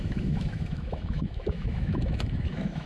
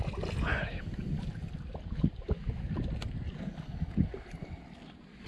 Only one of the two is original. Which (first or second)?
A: second